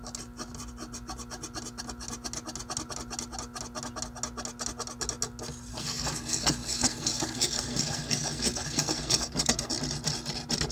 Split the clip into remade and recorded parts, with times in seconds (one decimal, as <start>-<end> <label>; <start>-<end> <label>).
0.0-5.7 recorded; 5.7-9.7 remade; 9.7-10.7 recorded